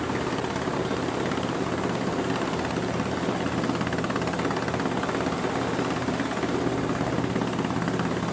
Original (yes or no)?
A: yes